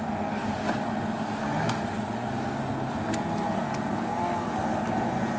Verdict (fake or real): real